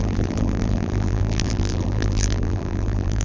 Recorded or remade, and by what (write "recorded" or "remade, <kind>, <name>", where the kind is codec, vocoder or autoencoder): remade, vocoder, BigVGAN v2